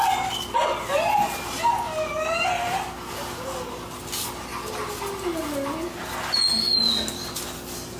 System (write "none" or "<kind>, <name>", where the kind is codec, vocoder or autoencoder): none